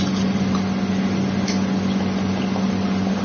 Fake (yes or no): no